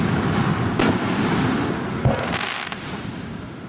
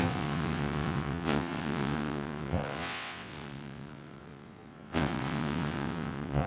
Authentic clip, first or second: first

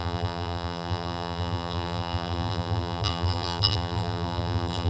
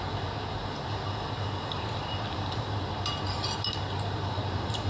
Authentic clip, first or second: second